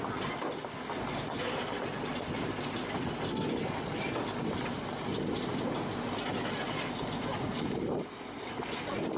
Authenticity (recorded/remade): recorded